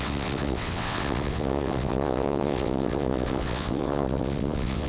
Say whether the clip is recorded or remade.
remade